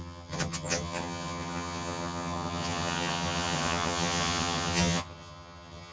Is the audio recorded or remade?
remade